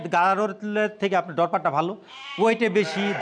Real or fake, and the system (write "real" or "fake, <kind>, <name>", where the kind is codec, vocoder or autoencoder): real